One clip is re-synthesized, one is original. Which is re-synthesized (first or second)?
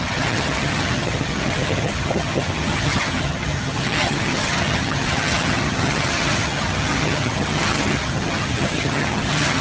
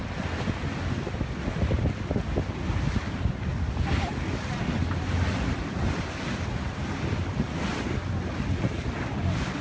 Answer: first